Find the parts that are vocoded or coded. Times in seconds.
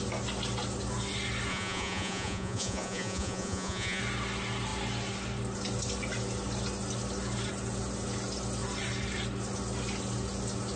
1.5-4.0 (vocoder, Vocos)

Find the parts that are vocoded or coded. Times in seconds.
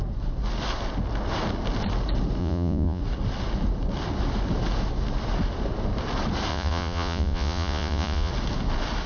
2.4-3.0 (vocoder, Vocos); 6.5-8.3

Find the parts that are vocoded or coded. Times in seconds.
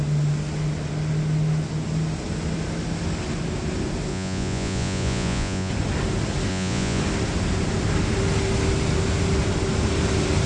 4.1-5.7 (vocoder, Vocos); 6.5-7.0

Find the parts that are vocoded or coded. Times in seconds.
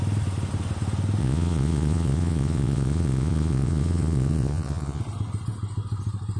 1.2-5.0 (vocoder, Vocos)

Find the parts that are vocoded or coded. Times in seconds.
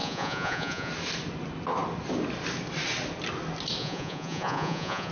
0.0-0.9 (vocoder, Vocos); 3.8-5.1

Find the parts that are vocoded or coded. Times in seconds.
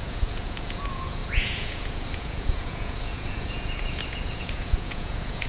0.0-5.5 (vocoder, Vocos)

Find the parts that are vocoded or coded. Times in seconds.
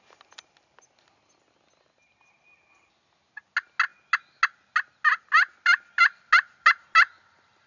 none